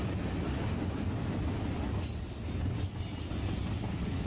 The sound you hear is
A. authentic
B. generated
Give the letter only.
A